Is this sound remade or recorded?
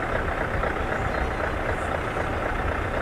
recorded